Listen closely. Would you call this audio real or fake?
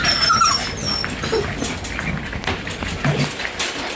real